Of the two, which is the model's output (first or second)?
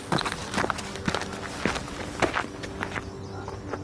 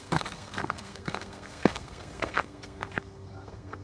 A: second